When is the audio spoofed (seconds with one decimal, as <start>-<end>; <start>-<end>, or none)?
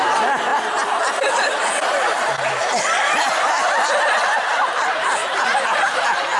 none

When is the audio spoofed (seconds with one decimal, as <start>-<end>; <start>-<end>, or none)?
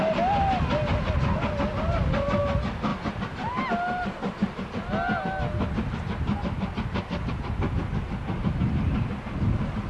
none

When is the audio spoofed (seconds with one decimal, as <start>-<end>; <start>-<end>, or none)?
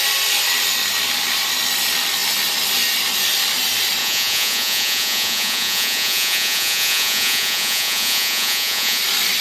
4.0-9.0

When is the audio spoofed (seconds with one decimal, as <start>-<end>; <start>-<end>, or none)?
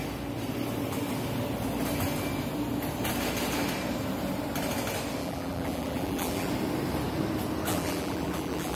5.2-6.5; 7.7-8.8